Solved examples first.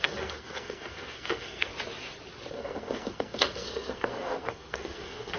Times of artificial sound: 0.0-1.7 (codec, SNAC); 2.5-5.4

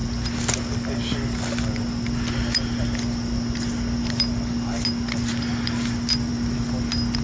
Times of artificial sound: none

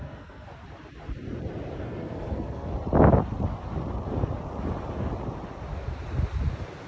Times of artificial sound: 0.0-0.5 (codec, SNAC); 1.8-2.7

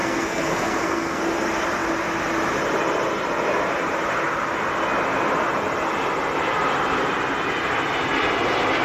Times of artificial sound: 0.0-1.2 (codec, SNAC)

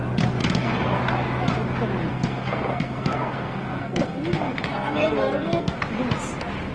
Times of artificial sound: 0.4-1.0 (codec, SNAC); 2.1-5.8

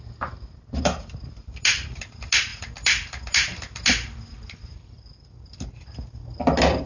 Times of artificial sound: none

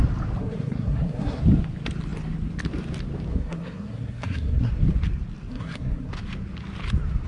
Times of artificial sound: 0.4-1.4 (codec, SNAC); 3.3-4.7; 5.5-6.1

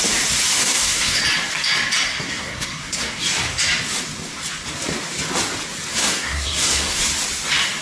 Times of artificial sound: 0.6-1.2 (codec, SNAC); 2.1-3.2; 5.9-7.0